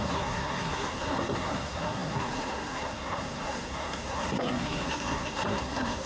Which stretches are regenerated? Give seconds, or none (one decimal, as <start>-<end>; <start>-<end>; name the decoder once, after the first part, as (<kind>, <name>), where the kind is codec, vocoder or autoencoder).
0.0-6.1 (codec, SNAC)